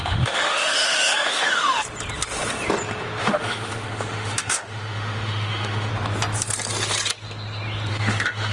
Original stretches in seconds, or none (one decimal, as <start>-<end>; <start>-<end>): 1.8-3.2; 5.9-7.9